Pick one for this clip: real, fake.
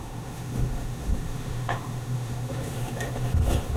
fake